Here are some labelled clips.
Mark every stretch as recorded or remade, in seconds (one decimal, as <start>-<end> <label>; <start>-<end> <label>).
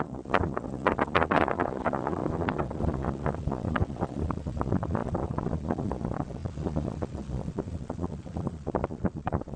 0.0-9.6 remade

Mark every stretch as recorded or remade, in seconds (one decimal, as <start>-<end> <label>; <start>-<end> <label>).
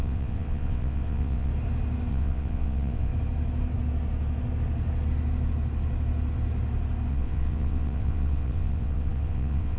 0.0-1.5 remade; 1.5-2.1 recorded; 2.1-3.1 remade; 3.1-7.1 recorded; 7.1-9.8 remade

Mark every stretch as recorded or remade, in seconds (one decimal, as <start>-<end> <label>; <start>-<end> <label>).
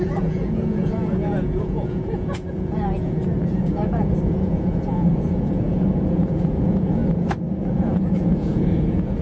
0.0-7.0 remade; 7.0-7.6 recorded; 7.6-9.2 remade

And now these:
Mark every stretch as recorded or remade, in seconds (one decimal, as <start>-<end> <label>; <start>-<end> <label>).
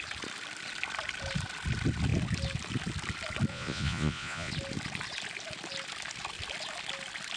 0.0-3.5 recorded; 3.5-4.5 remade; 4.5-7.4 recorded